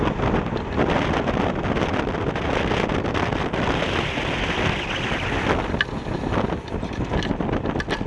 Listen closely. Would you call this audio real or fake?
real